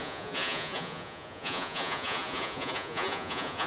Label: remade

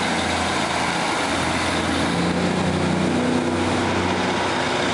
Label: recorded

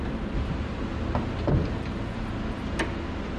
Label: recorded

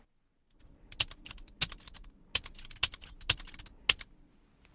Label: recorded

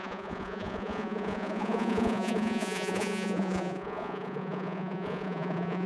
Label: remade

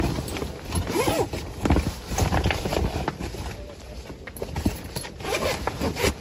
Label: recorded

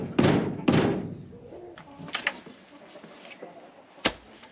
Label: recorded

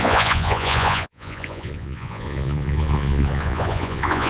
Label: remade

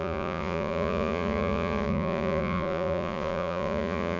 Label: remade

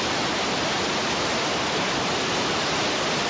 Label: recorded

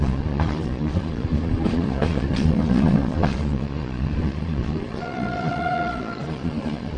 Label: remade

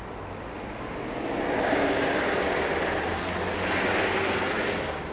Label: recorded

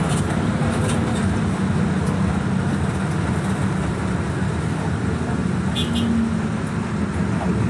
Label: recorded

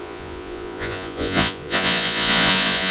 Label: remade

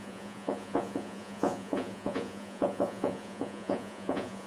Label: remade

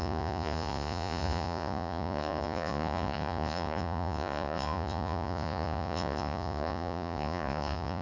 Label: remade